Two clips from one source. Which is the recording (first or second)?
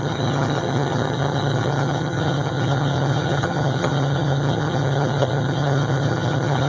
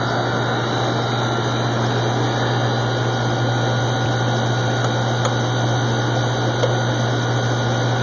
second